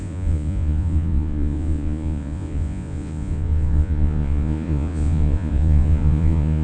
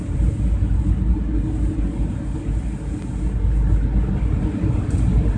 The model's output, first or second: first